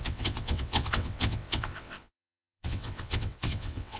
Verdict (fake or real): fake